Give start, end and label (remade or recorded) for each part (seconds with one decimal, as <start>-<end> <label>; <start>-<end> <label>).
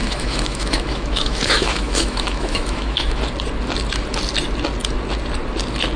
0.0-3.2 remade; 3.2-6.0 recorded